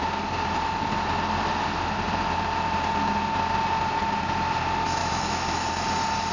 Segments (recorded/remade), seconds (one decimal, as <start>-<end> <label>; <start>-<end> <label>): 0.0-5.0 recorded; 5.0-5.7 remade; 5.7-6.3 recorded